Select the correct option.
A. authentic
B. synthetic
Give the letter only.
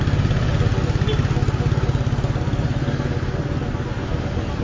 A